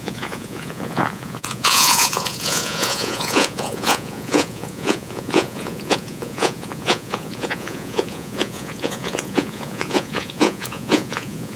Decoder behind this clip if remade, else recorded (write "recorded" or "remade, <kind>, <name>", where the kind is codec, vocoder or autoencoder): remade, vocoder, Vocos